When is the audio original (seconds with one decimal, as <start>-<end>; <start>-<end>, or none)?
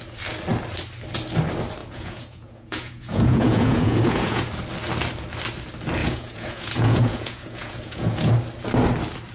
0.0-1.8; 4.5-6.0; 8.3-9.3